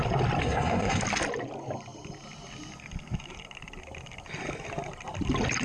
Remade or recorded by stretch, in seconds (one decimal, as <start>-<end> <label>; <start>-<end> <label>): 0.0-0.4 recorded; 0.4-1.0 remade; 1.0-5.6 recorded